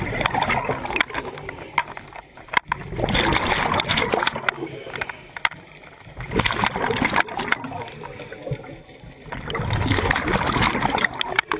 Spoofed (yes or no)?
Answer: no